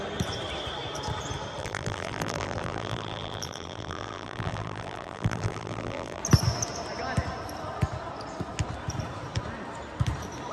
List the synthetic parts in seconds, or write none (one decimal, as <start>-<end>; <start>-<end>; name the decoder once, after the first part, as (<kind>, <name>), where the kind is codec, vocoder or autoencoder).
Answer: 1.6-6.2 (vocoder, BigVGAN v2)